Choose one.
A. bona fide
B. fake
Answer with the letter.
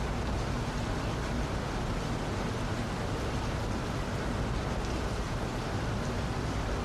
A